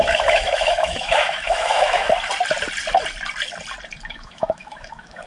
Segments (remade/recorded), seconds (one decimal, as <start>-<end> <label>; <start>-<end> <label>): 0.0-2.1 remade; 2.1-4.1 recorded; 4.1-5.3 remade